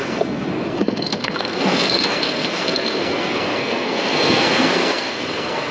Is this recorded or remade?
remade